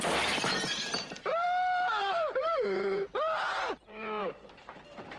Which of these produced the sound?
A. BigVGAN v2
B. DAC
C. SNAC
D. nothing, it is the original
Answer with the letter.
A